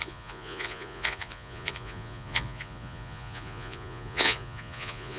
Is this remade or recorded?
remade